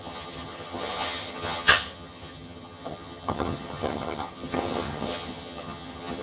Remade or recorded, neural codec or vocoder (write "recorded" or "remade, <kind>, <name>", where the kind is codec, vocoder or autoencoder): remade, vocoder, HiFi-GAN